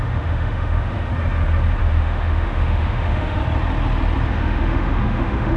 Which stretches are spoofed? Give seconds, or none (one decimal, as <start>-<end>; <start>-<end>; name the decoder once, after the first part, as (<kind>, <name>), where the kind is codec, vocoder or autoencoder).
0.0-1.1 (autoencoder, DAC-VAE); 1.8-3.4; 4.3-5.6

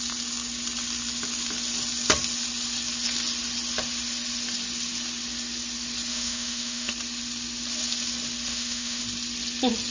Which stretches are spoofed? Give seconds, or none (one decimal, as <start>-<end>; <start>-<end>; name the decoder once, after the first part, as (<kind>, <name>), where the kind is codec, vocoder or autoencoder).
6.1-6.9 (autoencoder, DAC-VAE); 8.5-9.0